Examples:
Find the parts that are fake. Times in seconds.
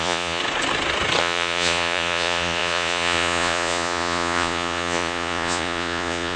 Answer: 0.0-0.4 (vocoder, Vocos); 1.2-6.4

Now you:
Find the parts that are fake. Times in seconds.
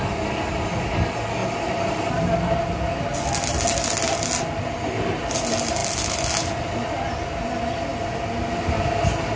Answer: none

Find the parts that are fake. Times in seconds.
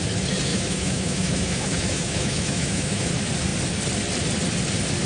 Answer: 0.5-3.1 (autoencoder, DAC-VAE)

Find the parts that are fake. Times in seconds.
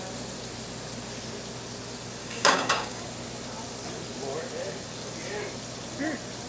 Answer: 2.2-3.0 (codec, DAC)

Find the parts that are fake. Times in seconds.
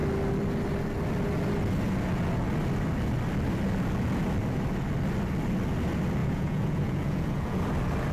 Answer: 6.2-7.6 (vocoder, Vocos)